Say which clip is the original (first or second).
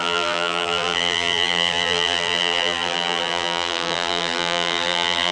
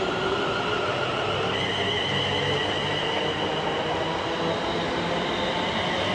second